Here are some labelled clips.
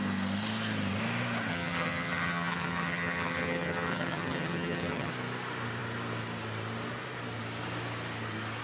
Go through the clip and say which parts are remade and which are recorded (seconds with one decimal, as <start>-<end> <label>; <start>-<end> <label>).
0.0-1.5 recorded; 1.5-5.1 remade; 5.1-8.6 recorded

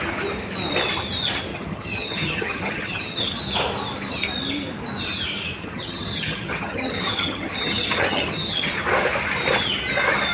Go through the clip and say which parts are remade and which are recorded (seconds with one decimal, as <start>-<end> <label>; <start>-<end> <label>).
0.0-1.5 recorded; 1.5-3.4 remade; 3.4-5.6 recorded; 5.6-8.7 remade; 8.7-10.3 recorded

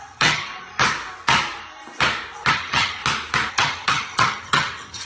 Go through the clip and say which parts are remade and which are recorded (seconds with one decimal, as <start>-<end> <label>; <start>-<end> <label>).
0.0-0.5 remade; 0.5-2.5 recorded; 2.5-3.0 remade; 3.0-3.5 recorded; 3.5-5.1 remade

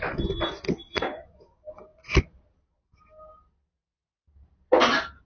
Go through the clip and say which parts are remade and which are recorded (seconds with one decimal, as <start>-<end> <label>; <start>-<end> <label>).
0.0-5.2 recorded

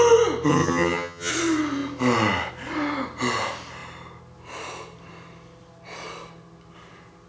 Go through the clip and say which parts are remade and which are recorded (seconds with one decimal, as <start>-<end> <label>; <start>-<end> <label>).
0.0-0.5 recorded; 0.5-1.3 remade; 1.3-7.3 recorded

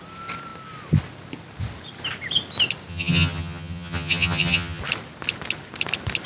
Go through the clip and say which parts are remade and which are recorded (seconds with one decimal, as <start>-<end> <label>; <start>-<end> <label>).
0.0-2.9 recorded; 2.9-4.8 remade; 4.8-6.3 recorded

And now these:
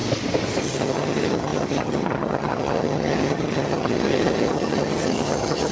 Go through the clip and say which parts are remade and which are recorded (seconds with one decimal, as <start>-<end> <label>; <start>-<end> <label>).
0.0-0.6 recorded; 0.6-5.7 remade

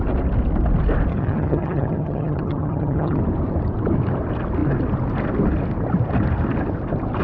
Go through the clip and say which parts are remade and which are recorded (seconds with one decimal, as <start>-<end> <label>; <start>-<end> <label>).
0.0-1.1 recorded; 1.1-3.2 remade; 3.2-7.2 recorded